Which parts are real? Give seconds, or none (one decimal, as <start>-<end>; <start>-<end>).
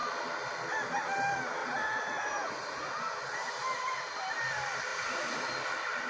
0.0-1.6; 3.0-4.9; 5.5-6.1